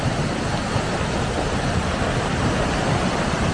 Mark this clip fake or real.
real